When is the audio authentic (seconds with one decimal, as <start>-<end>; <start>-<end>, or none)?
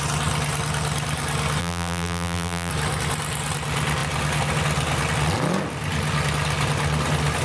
0.0-1.6; 2.7-7.4